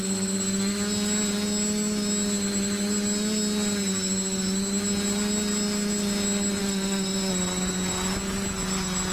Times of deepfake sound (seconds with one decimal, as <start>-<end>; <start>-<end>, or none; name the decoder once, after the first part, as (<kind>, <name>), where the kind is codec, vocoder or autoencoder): 6.6-7.3 (autoencoder, DAC-VAE)